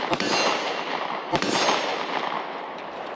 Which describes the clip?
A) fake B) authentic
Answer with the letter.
B